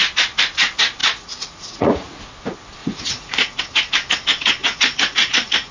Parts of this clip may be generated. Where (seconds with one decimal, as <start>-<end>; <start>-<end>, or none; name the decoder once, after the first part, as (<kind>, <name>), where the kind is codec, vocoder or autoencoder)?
1.0-2.2 (vocoder, Vocos); 2.8-3.6; 4.6-5.7